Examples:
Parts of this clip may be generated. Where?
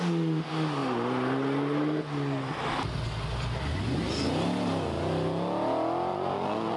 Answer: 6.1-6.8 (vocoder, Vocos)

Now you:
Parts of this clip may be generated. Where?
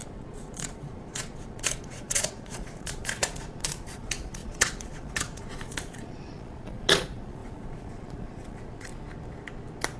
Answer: 0.0-8.9 (vocoder, Vocos)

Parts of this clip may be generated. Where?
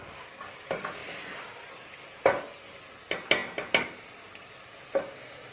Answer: none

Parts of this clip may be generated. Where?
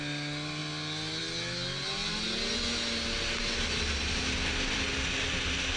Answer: none